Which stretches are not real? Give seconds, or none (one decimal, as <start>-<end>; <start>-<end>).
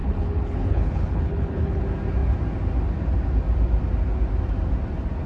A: 0.0-1.8